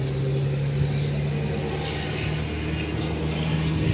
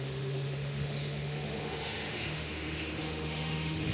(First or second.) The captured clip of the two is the first